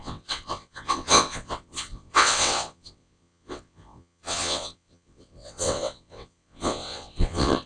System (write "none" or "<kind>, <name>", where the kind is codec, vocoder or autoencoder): vocoder, WaveNeXt